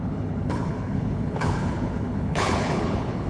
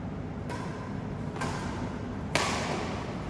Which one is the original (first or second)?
second